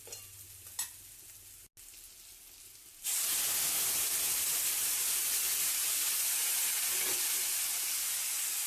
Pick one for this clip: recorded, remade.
recorded